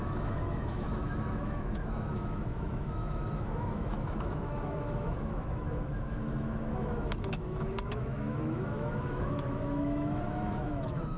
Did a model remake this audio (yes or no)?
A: yes